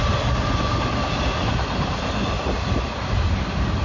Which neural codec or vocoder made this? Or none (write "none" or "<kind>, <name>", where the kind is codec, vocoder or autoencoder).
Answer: none